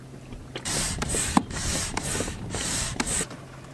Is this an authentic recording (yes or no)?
no